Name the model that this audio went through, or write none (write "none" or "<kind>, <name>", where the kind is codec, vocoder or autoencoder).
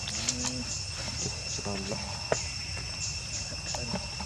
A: none